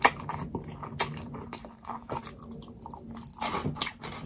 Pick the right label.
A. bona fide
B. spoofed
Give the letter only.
A